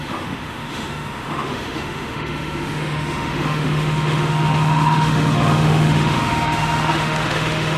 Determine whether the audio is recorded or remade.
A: remade